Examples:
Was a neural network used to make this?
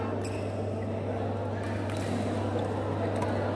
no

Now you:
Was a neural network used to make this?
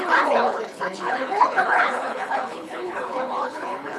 yes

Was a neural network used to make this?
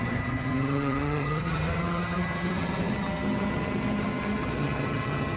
yes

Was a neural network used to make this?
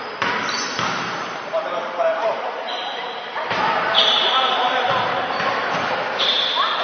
yes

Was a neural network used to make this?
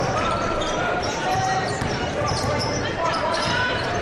yes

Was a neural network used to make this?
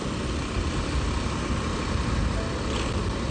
no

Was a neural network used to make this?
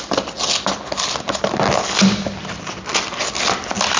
no